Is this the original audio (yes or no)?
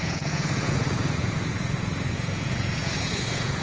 no